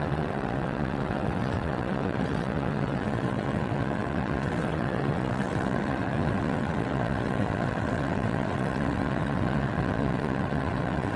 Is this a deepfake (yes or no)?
yes